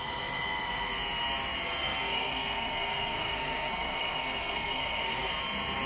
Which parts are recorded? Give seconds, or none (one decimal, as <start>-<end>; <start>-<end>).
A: 0.0-1.8; 5.3-5.9